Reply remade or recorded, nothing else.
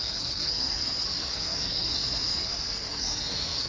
remade